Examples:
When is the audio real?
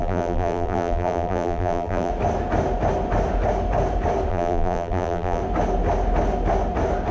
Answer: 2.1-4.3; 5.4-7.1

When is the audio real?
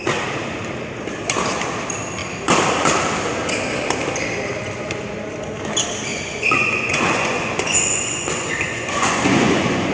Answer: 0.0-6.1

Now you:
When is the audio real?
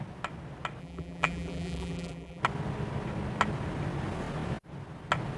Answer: 0.0-0.8; 2.4-5.4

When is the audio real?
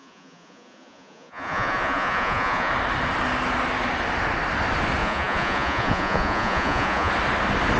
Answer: 2.7-5.0; 7.1-7.8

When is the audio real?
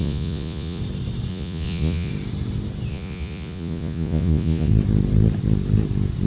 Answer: 0.8-1.3; 2.1-2.9; 4.7-6.3